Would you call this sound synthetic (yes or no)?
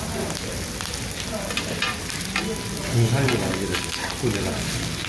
no